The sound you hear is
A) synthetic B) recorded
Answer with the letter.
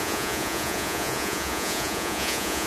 A